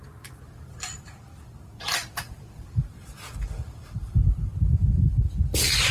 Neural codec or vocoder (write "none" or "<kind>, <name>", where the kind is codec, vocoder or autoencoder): none